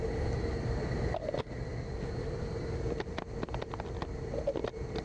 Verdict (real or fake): real